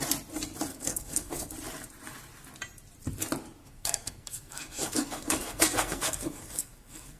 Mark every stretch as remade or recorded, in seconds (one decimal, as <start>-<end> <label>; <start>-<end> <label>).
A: 0.0-0.7 recorded; 0.7-1.5 remade; 1.5-3.6 recorded; 3.6-7.2 remade